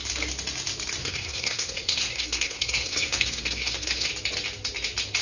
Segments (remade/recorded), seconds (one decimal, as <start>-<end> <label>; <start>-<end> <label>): 0.0-1.0 recorded; 1.0-4.1 remade; 4.1-5.2 recorded